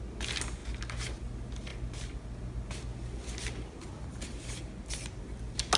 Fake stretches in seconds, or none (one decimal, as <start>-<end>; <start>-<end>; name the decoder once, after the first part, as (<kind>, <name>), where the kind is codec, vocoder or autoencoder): none